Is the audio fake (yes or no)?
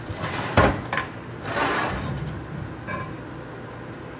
no